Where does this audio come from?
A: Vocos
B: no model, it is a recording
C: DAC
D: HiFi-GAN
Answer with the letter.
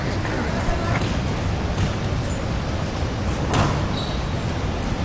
B